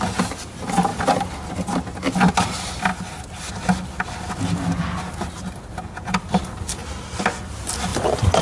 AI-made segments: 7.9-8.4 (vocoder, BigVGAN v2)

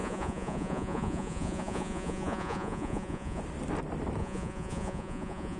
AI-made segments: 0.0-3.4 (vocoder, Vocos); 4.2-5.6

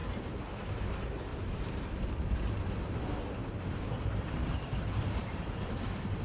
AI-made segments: 0.0-0.8 (vocoder, BigVGAN v2); 1.3-3.0; 3.4-6.2